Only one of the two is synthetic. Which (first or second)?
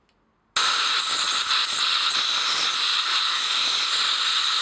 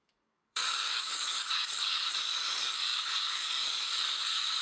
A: second